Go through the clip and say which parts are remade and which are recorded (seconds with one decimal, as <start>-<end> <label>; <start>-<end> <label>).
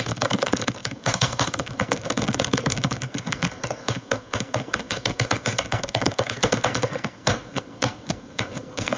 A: 0.0-9.0 remade